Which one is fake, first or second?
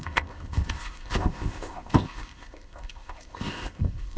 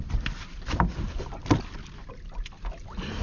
first